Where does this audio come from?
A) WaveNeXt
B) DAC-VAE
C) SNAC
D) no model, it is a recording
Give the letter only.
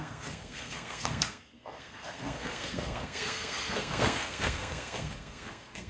C